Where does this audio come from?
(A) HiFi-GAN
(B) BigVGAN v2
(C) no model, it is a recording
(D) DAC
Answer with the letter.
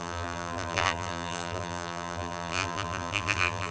B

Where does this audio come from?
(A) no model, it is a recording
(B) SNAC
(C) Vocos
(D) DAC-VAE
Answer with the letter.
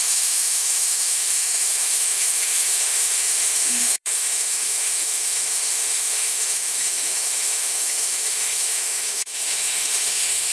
D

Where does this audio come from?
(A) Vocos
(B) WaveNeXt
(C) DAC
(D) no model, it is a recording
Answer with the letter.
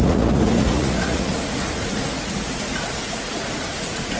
A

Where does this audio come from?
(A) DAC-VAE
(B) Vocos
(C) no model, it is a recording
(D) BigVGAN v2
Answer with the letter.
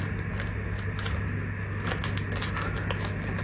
C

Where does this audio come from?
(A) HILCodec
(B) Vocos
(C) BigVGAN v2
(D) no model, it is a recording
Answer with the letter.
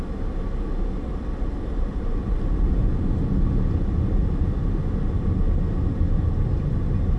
D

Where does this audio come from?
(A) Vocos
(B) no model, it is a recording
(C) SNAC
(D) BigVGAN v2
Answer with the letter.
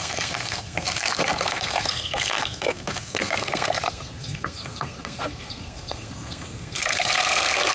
C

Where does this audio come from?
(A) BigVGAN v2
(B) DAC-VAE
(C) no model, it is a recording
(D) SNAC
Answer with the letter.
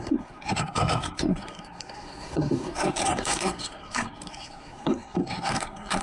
D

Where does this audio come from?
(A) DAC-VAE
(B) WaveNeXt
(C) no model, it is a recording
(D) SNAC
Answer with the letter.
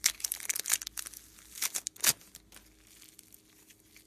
C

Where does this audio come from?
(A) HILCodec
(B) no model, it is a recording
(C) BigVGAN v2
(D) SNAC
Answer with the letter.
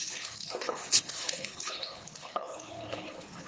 A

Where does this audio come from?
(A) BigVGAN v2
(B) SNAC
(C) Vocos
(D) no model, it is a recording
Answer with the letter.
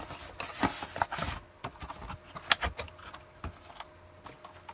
D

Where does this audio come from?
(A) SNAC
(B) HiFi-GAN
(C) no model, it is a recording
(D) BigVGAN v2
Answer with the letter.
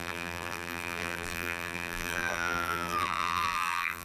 D